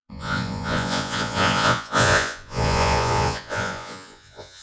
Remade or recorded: remade